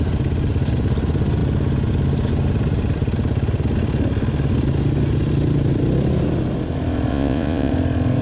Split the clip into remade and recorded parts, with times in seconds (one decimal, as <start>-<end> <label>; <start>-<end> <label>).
0.0-7.1 recorded; 7.1-7.7 remade; 7.7-8.2 recorded